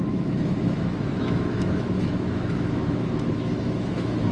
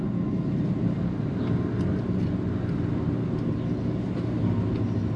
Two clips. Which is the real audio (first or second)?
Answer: second